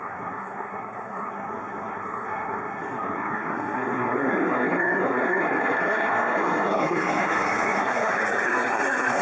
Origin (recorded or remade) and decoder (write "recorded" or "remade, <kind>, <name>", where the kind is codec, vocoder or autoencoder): remade, codec, SNAC